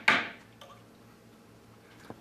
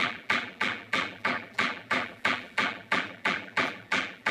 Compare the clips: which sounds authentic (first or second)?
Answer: first